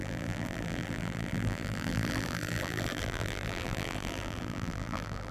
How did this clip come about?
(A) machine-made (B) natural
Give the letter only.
A